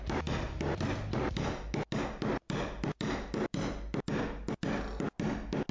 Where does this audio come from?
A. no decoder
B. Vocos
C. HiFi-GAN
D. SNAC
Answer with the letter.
A